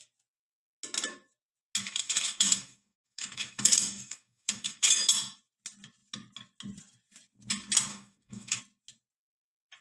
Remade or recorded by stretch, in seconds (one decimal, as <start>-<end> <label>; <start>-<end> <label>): 0.0-1.8 recorded; 1.8-4.9 remade; 4.9-7.9 recorded; 7.9-8.6 remade; 8.6-9.8 recorded